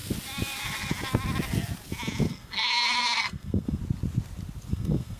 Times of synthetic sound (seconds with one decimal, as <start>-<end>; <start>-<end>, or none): 2.3-3.8; 4.7-5.2